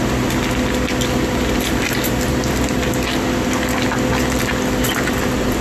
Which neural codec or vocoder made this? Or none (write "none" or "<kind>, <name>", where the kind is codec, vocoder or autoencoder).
none